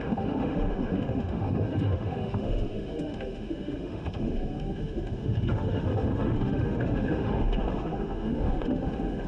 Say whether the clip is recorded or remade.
remade